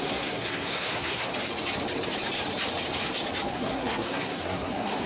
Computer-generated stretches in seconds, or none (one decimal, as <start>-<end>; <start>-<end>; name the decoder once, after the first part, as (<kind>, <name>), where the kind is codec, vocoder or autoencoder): 0.0-1.3 (codec, SNAC); 3.5-5.1